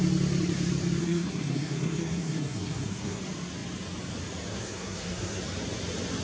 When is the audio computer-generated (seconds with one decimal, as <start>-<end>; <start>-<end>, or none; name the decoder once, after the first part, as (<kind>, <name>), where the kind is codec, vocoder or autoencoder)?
1.0-3.2 (codec, SNAC); 4.5-5.4